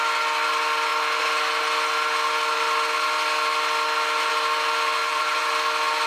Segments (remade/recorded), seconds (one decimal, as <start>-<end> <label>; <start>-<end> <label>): 0.0-5.0 recorded; 5.0-5.5 remade; 5.5-6.1 recorded